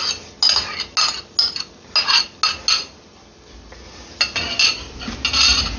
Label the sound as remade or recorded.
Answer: recorded